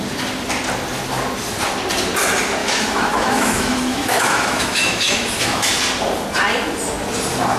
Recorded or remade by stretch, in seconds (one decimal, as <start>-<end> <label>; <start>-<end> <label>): 0.0-2.6 recorded; 2.6-5.7 remade; 5.7-7.6 recorded